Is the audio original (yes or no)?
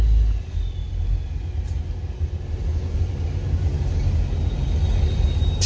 yes